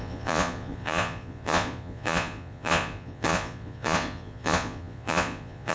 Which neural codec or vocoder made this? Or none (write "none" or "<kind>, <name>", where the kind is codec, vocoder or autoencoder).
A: vocoder, Vocos